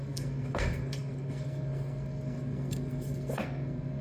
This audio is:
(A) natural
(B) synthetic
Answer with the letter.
B